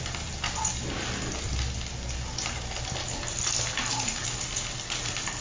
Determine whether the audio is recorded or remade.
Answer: recorded